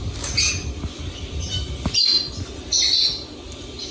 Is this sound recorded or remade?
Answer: recorded